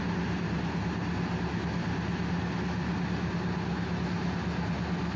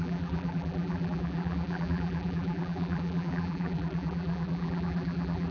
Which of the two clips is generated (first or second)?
second